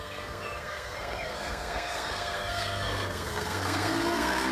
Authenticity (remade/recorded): remade